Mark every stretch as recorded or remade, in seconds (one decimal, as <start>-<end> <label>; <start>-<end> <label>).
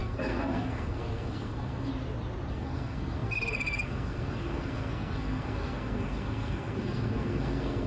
0.0-1.9 remade; 1.9-2.5 recorded; 2.5-7.9 remade